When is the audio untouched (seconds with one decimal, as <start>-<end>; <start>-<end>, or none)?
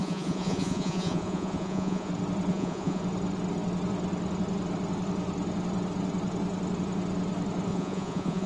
2.1-2.5; 3.0-7.7